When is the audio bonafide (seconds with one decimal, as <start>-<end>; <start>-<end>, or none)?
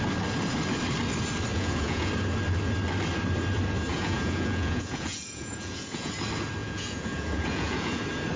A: 0.0-1.5; 2.1-3.9; 6.1-6.6; 8.0-8.4